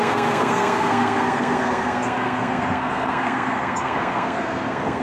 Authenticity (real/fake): fake